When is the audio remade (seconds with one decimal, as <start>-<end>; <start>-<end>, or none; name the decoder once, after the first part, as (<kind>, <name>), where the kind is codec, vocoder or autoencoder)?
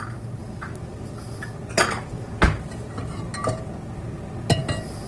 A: none